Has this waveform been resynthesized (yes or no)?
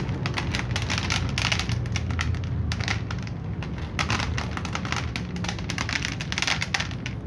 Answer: no